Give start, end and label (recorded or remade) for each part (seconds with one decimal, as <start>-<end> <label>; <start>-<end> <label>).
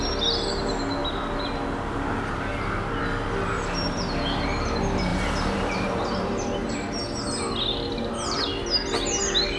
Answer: 0.0-5.1 recorded; 5.1-6.7 remade; 6.7-9.6 recorded